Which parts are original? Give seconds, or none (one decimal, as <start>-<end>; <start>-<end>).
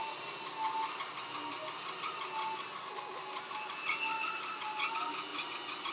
0.0-5.9